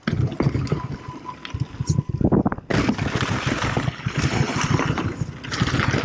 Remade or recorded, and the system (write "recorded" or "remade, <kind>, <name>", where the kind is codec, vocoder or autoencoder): recorded